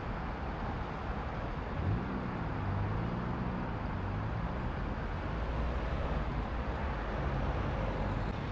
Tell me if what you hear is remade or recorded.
recorded